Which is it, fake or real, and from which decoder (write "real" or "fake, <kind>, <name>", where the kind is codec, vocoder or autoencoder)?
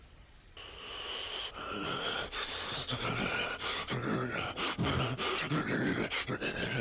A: real